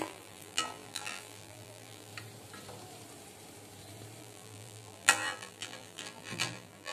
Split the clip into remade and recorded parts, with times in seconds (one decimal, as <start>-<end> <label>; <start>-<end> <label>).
0.0-2.1 remade; 2.1-4.2 recorded; 4.2-6.9 remade